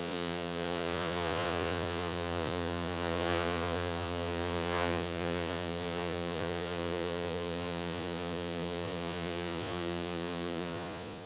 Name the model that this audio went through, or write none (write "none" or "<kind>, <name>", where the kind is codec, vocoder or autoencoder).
vocoder, Vocos